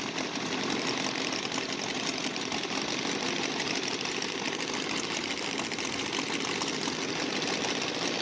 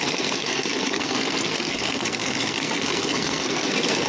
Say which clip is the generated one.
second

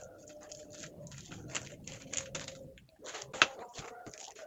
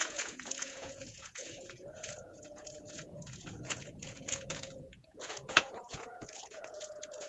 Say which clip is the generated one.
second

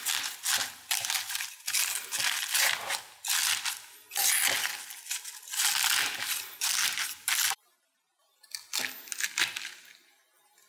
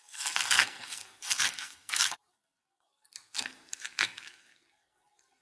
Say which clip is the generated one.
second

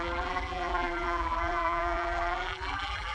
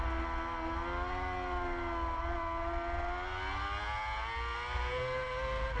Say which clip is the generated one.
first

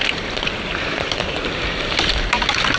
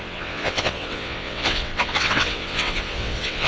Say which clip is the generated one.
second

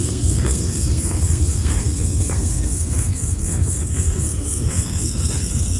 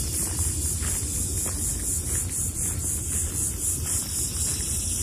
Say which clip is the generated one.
first